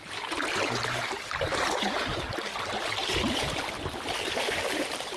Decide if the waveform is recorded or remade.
recorded